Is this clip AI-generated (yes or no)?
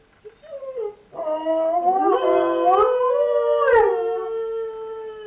no